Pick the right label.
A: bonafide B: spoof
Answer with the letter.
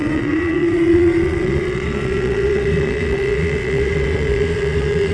B